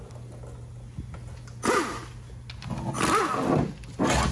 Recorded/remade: recorded